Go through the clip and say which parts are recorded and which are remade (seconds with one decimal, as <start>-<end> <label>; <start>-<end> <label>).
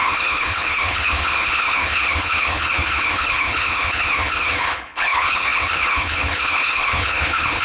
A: 0.0-7.6 remade